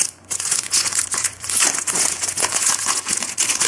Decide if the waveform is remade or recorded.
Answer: remade